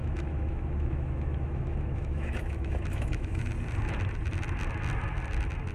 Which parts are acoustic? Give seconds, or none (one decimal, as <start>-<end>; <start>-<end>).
3.4-5.7